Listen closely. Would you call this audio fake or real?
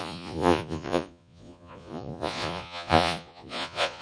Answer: fake